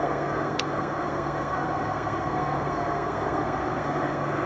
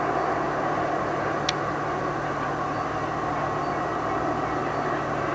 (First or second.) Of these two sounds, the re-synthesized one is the first